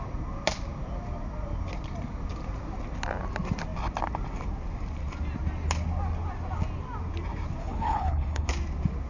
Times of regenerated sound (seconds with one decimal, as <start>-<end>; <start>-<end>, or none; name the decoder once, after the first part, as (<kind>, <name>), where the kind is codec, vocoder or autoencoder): 7.6-8.5 (codec, HILCodec)